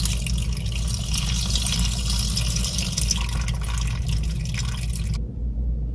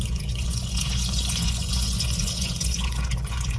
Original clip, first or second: first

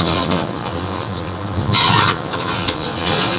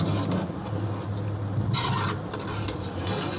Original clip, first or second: second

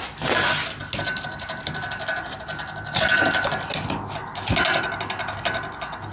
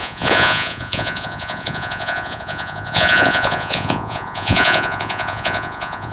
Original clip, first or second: first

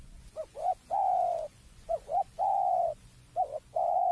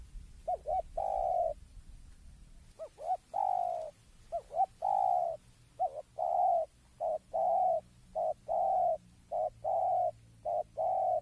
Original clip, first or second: second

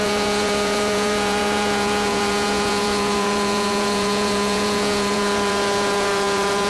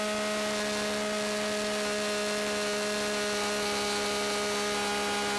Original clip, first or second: second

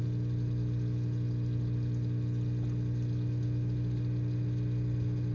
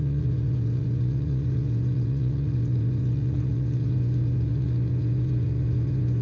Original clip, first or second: first